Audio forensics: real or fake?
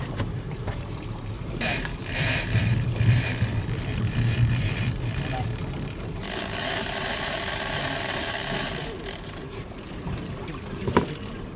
fake